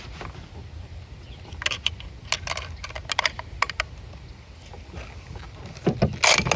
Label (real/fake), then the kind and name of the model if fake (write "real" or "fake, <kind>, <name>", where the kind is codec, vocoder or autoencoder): real